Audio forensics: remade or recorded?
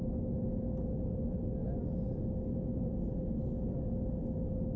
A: recorded